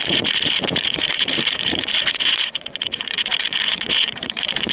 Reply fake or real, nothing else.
fake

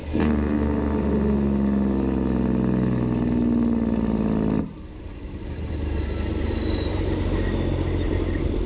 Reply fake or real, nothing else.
real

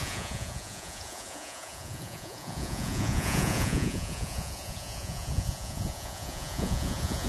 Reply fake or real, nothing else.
fake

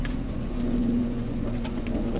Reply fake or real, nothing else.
fake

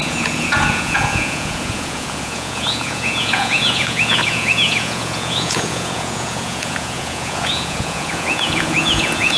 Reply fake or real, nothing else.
fake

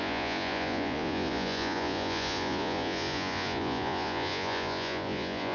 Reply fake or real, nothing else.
fake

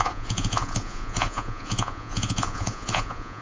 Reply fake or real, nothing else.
fake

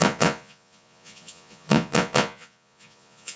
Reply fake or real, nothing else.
fake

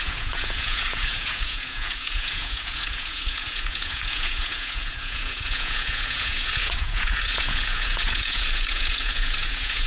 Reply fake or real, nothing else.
fake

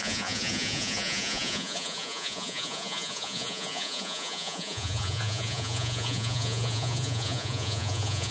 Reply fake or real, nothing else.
fake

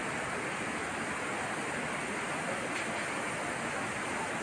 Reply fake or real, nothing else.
real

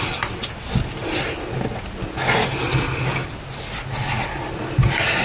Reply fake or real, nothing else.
real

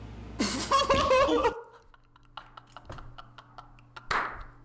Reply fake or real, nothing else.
real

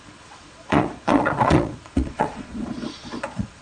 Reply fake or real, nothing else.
fake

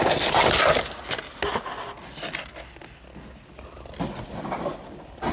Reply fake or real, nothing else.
real